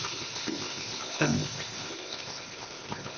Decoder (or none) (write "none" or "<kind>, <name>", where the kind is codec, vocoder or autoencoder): codec, ZipCodec